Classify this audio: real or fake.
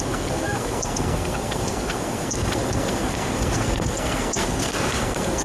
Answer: fake